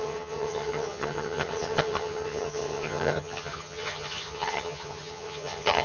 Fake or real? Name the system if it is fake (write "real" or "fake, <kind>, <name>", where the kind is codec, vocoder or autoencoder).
fake, vocoder, HiFi-GAN